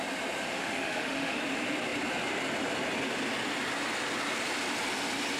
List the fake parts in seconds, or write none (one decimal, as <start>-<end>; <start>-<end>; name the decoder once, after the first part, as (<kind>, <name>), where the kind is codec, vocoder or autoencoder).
0.5-1.4 (autoencoder, DAC-VAE)

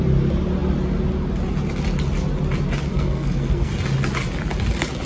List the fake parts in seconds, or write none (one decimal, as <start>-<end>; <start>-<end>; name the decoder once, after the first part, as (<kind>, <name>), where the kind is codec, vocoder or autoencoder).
2.9-3.7 (codec, SNAC)

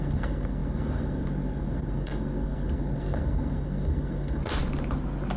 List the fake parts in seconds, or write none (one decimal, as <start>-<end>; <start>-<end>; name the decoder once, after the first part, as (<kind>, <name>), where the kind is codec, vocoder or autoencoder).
0.0-4.4 (codec, SNAC)

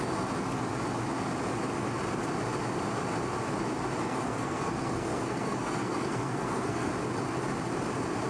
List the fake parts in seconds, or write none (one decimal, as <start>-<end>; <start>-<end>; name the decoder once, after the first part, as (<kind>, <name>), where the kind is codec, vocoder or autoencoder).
4.0-6.9 (codec, SNAC)

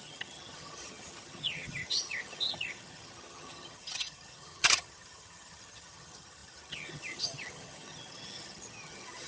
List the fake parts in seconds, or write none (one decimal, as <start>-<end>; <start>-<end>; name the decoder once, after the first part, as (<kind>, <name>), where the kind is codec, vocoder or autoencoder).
0.0-9.3 (vocoder, HiFi-GAN)